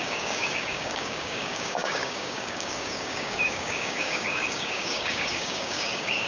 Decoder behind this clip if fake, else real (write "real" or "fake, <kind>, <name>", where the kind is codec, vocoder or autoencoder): fake, codec, DAC